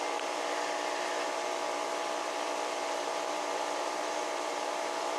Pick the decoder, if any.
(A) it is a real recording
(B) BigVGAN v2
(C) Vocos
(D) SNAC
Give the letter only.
B